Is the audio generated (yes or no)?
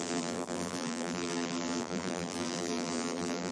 yes